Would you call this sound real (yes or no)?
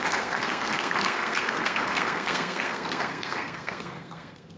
no